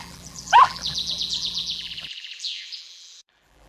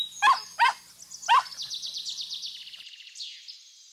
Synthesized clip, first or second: first